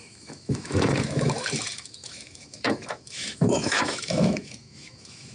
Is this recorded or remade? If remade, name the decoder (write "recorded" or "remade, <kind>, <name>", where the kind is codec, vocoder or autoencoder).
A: remade, autoencoder, DAC-VAE